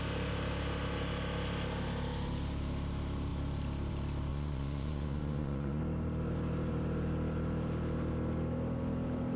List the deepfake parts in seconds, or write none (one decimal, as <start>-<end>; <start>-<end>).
4.3-5.8